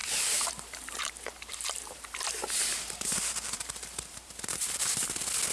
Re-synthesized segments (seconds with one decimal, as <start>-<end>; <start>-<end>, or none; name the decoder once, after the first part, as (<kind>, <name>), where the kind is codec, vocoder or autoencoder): 0.0-2.3 (vocoder, BigVGAN v2); 2.7-4.8